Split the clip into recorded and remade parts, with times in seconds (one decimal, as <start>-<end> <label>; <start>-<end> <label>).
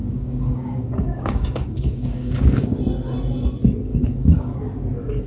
0.0-2.8 remade; 2.8-3.9 recorded; 3.9-4.6 remade; 4.6-5.3 recorded